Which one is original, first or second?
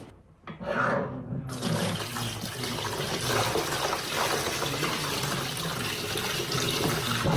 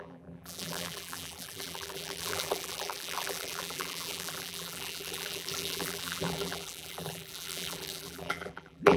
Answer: first